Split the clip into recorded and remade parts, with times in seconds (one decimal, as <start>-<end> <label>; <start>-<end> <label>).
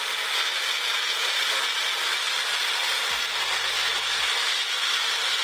0.0-5.4 recorded